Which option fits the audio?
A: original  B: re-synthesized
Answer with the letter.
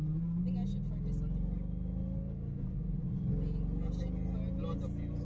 A